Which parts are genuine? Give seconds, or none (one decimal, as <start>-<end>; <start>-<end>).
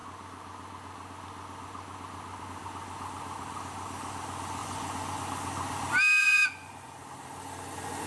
0.0-4.6; 5.2-6.2; 6.9-8.1